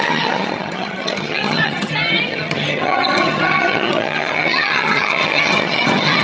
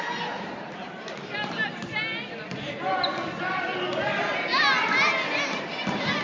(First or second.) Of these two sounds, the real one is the second